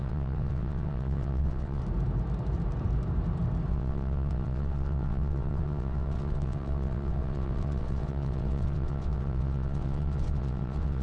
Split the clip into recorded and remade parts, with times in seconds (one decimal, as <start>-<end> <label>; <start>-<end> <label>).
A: 0.0-1.8 remade; 1.8-3.7 recorded; 3.7-11.0 remade